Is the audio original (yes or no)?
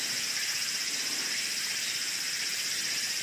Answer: no